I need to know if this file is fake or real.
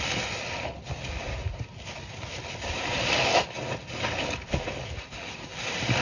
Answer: real